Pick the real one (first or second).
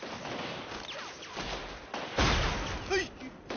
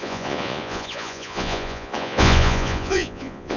first